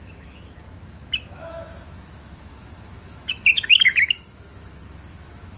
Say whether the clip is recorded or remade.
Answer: remade